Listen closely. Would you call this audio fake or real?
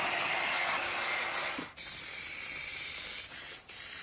fake